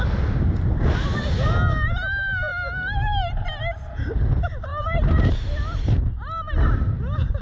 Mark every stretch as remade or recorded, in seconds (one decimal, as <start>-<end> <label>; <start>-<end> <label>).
0.0-7.4 recorded